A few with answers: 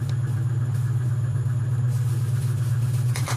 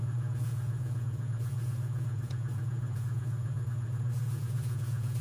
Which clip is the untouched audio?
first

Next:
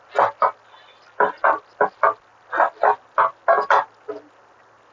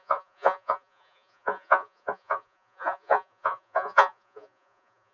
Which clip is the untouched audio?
first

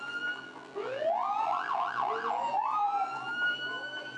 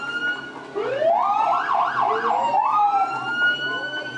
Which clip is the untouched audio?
second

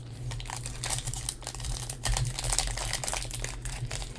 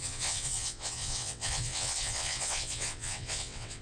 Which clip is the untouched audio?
first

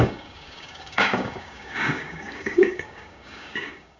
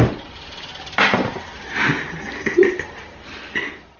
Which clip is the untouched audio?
second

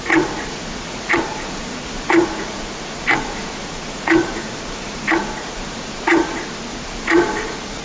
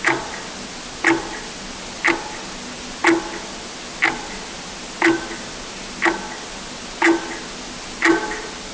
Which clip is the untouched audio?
second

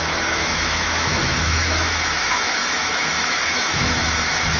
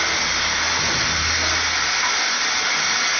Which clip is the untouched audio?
second